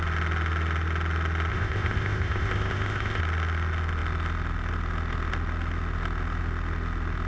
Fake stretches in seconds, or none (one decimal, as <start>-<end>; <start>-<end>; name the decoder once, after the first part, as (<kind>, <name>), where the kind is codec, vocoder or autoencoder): 1.5-3.2 (codec, ZipCodec)